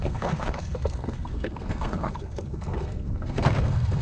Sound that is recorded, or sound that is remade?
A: remade